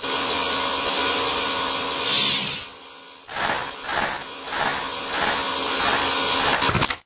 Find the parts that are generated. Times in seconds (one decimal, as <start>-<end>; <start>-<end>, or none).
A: none